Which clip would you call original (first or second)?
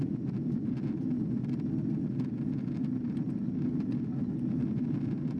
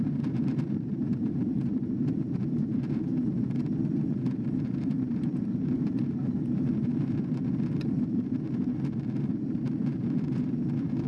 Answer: first